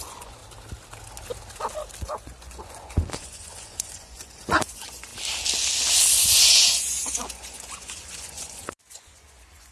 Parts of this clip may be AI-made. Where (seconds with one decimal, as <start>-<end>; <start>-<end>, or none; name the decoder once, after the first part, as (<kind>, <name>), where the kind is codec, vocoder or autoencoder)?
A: 0.0-0.4 (vocoder, Vocos); 2.0-5.1; 6.5-9.7